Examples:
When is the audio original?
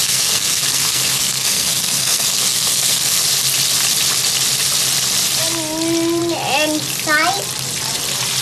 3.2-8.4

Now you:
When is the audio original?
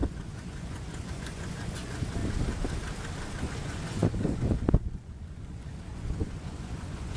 2.2-3.4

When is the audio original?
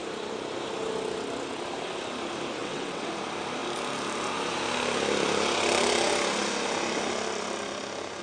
0.0-2.6; 3.1-8.2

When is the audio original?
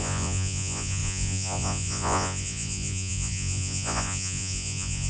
none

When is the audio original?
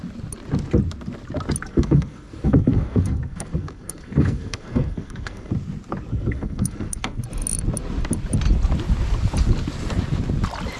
0.0-1.7; 5.5-6.1; 7.2-10.8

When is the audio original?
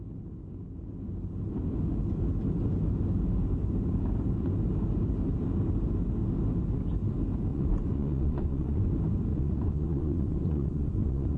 0.0-7.5; 8.9-9.3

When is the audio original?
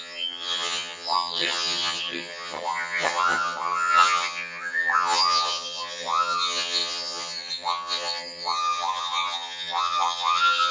none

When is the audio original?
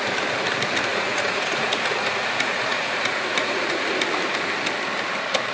0.0-0.9; 3.7-5.5